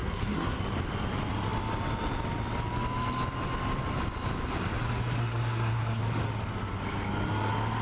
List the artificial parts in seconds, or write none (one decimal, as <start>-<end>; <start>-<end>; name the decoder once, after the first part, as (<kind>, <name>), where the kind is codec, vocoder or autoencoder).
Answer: 0.0-0.6 (codec, SNAC); 5.2-6.0

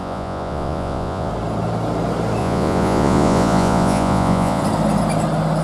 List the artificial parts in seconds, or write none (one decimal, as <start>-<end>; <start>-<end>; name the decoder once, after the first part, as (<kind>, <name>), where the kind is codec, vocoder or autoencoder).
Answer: 0.0-1.3 (vocoder, Vocos); 2.4-4.6

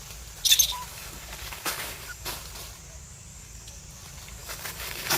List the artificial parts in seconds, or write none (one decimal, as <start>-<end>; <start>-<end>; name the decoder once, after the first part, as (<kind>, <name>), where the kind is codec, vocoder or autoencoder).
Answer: 0.9-2.4 (codec, DAC); 3.3-3.8; 4.4-5.2

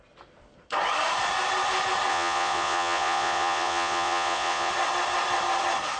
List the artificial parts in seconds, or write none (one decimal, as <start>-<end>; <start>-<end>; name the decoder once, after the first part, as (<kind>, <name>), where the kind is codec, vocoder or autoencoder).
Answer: 2.1-4.7 (vocoder, Vocos)

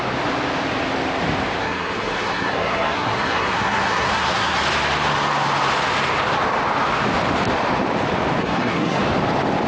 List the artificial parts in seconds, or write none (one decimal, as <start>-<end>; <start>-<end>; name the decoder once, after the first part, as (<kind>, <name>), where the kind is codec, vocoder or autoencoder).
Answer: 1.6-4.6 (codec, SNAC); 8.4-9.0

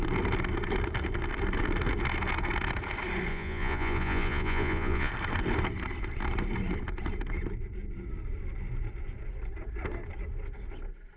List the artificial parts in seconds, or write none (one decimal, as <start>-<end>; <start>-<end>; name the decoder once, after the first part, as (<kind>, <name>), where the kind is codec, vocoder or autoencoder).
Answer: 3.3-5.1 (vocoder, Vocos)

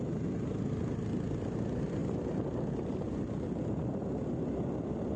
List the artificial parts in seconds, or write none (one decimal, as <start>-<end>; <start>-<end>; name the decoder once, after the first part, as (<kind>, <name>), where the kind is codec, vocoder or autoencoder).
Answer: 2.0-3.8 (vocoder, BigVGAN v2)